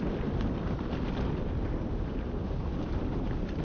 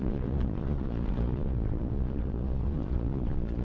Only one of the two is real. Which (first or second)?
first